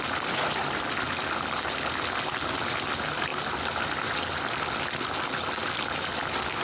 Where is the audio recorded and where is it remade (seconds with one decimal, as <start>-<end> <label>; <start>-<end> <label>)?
0.0-6.6 recorded